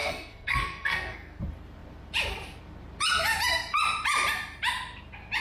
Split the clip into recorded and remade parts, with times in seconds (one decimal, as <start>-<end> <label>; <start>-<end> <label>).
0.0-1.4 remade; 1.4-5.4 recorded